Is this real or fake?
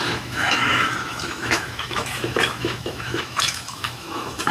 fake